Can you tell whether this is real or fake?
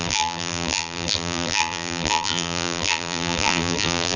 fake